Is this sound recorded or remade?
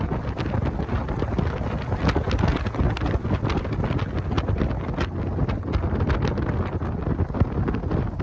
recorded